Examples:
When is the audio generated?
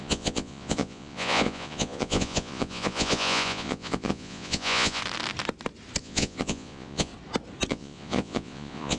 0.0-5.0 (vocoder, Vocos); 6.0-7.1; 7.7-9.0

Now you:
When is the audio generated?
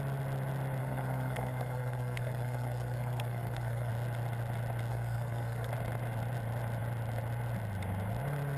0.8-3.9 (codec, SNAC); 4.9-5.7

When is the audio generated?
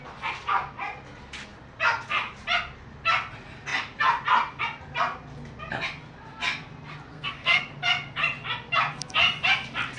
7.1-7.6 (codec, SNAC)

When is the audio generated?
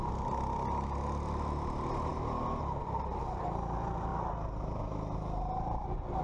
none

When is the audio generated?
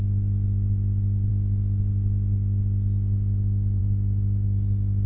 0.0-5.1 (vocoder, Vocos)